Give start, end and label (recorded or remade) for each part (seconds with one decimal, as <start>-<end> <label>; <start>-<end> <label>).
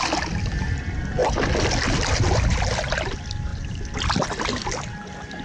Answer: 0.0-5.4 recorded